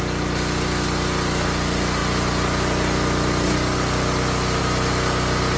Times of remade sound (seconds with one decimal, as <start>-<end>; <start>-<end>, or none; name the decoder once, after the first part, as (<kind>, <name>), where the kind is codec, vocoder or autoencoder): none